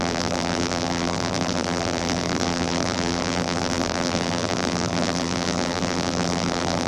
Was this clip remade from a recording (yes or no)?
yes